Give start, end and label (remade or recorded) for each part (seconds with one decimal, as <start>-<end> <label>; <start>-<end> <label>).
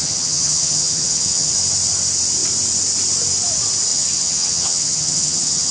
0.0-1.5 remade; 1.5-3.9 recorded; 3.9-5.7 remade